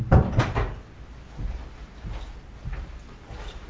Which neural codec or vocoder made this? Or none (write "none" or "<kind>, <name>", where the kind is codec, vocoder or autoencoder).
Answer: none